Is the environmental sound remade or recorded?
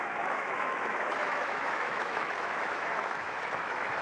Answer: remade